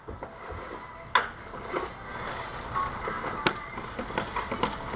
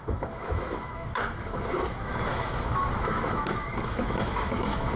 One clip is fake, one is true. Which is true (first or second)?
first